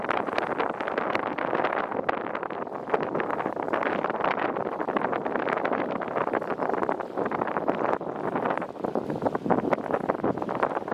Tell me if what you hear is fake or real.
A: real